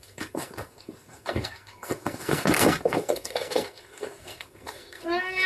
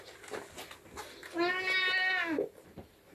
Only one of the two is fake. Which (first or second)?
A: first